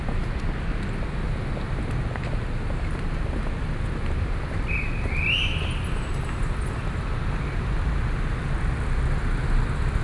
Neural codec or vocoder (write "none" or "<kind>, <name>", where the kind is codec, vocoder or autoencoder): none